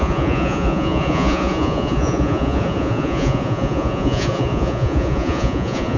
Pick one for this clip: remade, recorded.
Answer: remade